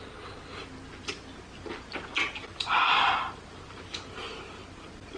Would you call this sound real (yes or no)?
yes